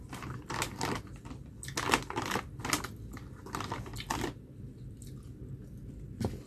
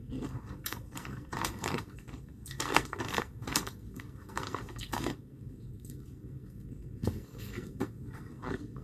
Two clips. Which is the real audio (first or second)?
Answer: first